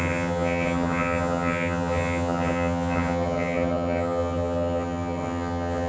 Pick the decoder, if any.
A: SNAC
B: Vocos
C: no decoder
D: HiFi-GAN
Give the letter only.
D